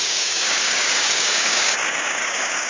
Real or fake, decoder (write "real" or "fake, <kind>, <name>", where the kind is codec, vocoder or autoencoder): fake, codec, DAC